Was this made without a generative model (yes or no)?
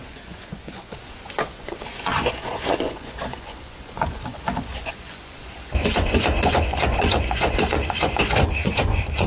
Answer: no